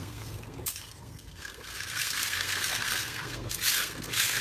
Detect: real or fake fake